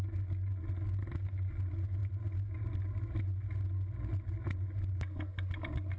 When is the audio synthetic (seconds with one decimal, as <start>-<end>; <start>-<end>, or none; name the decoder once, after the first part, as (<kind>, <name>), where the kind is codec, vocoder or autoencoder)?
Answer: none